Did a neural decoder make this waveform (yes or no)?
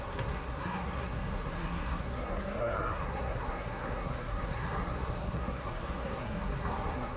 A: yes